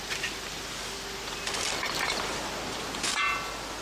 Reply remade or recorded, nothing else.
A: recorded